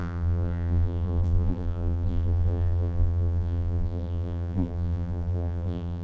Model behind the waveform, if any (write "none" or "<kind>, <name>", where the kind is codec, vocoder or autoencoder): vocoder, BigVGAN v2